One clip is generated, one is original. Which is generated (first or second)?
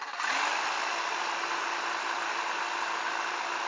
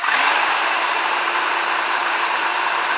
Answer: second